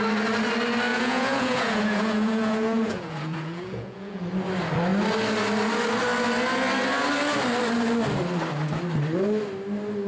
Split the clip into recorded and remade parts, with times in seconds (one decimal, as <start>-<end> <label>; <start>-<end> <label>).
0.0-0.9 recorded; 0.9-4.2 remade; 4.2-10.1 recorded